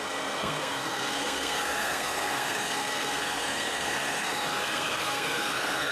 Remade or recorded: remade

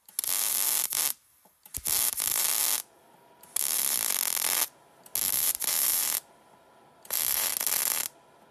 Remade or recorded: recorded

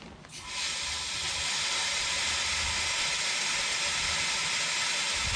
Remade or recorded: recorded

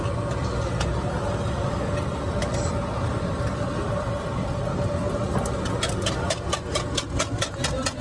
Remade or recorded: recorded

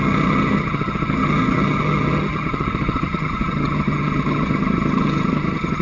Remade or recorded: remade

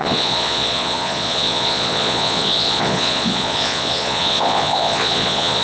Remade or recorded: remade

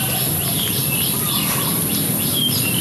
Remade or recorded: recorded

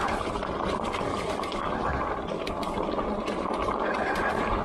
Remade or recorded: recorded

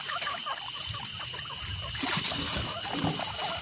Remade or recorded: recorded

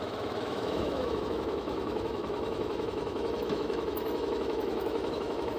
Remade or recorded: remade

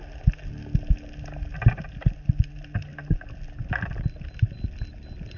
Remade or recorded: recorded